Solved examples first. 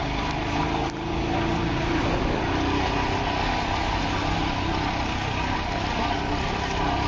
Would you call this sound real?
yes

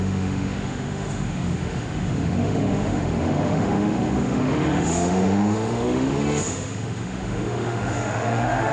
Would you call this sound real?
no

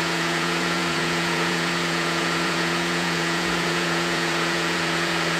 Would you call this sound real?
no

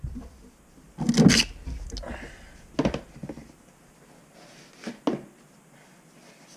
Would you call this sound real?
yes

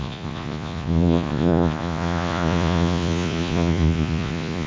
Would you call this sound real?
no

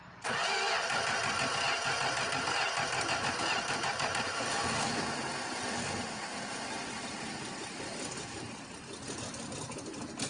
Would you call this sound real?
yes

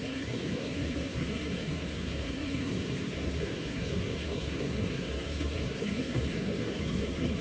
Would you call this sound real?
no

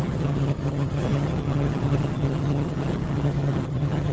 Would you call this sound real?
no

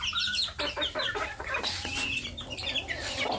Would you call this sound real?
no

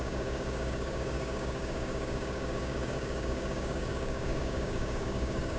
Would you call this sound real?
no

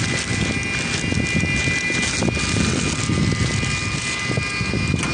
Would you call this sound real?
yes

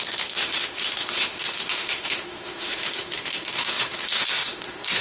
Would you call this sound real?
no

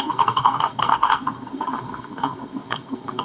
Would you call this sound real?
no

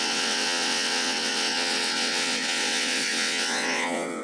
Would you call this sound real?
no